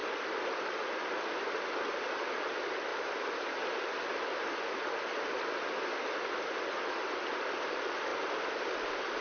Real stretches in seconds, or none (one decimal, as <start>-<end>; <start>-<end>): 0.0-9.2